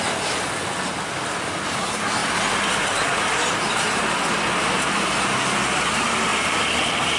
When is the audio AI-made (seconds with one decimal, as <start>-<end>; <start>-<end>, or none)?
2.2-5.4; 6.3-7.2